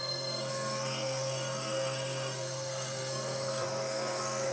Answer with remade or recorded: remade